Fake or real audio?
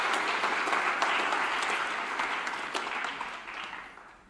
real